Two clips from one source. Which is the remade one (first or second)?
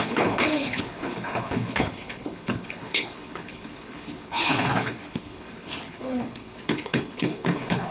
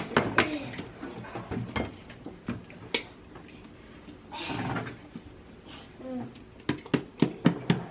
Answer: first